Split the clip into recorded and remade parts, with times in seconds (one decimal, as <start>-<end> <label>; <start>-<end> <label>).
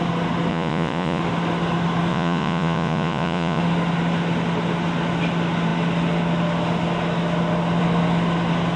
0.0-0.5 recorded; 0.5-1.2 remade; 1.2-2.1 recorded; 2.1-3.6 remade; 3.6-8.8 recorded